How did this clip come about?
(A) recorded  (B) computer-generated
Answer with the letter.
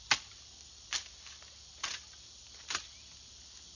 A